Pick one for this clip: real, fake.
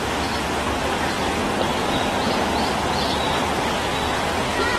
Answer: real